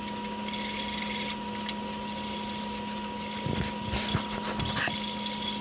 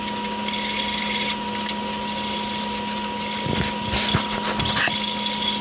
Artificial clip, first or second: first